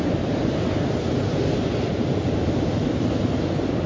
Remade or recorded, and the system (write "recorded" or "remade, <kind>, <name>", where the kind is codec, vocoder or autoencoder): recorded